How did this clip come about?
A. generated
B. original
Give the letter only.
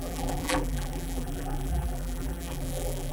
A